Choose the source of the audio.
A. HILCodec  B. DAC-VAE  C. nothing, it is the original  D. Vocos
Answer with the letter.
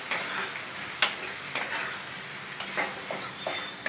C